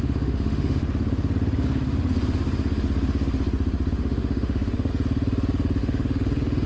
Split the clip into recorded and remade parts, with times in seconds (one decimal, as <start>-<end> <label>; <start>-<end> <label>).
0.0-0.8 remade; 0.8-3.9 recorded; 3.9-4.9 remade; 4.9-5.8 recorded; 5.8-6.7 remade